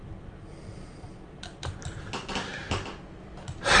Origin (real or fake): real